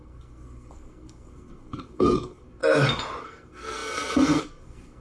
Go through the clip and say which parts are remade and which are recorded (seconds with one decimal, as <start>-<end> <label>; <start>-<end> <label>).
0.0-2.6 remade; 2.6-3.2 recorded; 3.2-5.0 remade